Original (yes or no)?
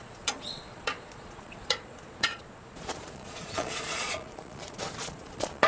no